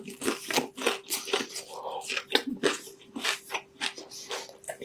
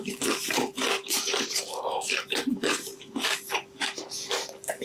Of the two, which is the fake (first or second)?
second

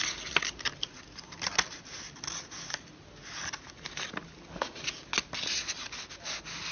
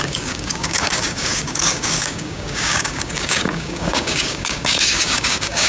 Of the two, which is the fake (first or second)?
second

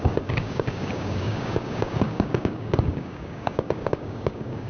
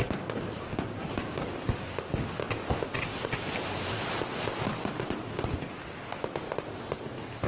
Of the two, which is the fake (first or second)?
first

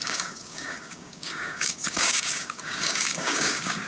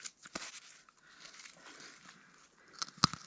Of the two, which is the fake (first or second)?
first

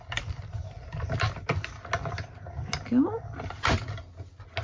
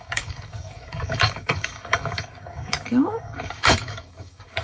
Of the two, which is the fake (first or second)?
second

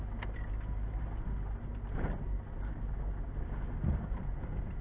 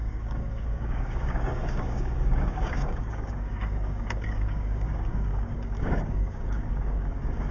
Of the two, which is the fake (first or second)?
second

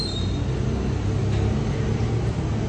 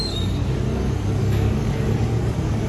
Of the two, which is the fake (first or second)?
second